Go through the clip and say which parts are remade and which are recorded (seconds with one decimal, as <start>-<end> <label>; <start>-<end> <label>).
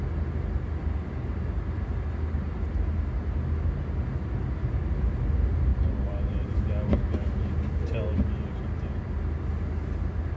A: 0.0-5.7 recorded; 5.7-6.5 remade; 6.5-10.4 recorded